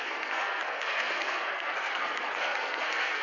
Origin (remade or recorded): remade